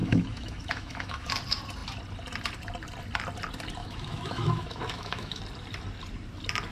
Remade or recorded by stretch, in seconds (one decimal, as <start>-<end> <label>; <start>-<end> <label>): 0.0-1.3 remade; 1.3-3.8 recorded; 3.8-5.4 remade; 5.4-6.7 recorded